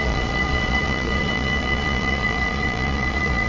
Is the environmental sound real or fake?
fake